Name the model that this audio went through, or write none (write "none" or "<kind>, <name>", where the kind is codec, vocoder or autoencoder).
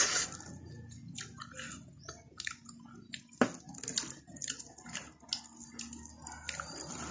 none